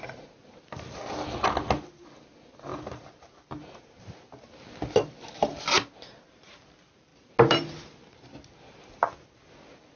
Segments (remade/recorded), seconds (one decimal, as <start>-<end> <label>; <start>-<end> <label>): 0.0-2.7 recorded; 2.7-4.0 remade; 4.0-10.0 recorded